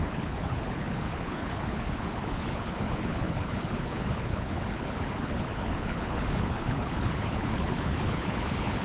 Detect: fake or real fake